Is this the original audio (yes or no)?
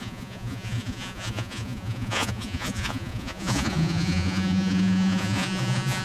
no